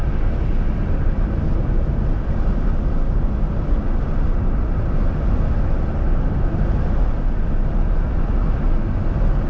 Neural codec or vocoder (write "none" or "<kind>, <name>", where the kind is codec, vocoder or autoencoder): none